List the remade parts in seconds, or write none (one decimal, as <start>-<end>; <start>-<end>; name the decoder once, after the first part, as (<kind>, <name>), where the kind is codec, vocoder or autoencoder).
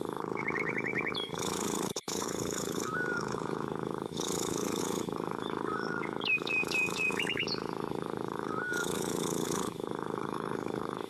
0.0-11.1 (codec, DAC)